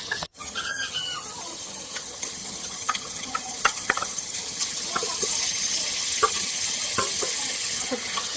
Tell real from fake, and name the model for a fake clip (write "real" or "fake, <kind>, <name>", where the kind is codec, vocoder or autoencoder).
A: fake, vocoder, HiFi-GAN